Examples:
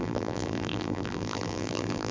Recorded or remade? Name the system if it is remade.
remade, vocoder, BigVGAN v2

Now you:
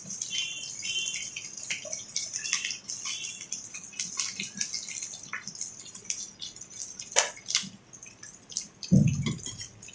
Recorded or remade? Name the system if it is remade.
recorded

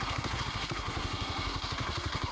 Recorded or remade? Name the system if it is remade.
remade, codec, SNAC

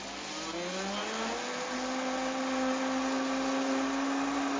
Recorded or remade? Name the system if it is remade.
recorded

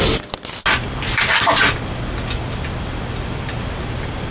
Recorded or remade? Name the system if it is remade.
recorded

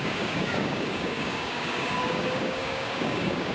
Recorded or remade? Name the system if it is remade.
remade, codec, DAC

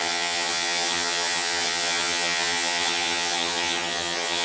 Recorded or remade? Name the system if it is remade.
remade, vocoder, HiFi-GAN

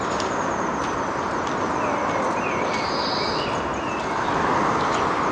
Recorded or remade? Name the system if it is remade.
recorded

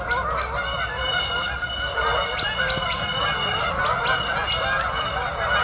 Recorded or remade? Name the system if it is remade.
recorded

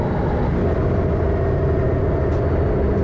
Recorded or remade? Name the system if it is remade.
recorded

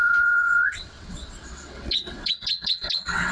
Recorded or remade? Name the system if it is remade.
remade, vocoder, WaveNeXt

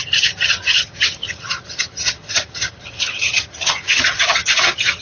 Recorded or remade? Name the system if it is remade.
remade, vocoder, HiFi-GAN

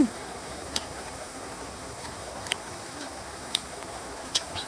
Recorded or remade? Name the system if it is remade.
remade, codec, SNAC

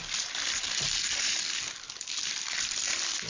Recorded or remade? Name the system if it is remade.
recorded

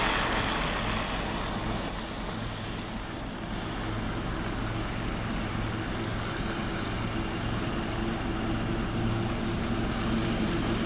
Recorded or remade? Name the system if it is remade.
recorded